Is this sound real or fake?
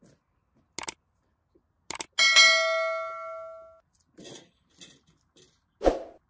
real